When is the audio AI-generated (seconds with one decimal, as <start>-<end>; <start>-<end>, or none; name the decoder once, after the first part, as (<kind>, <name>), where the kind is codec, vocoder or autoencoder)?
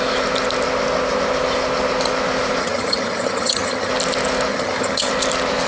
2.6-3.9 (vocoder, HiFi-GAN); 4.5-5.1